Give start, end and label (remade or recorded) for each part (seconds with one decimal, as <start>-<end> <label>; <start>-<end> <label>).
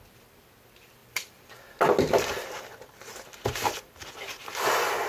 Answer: 0.0-1.0 recorded; 1.0-1.5 remade; 1.5-5.1 recorded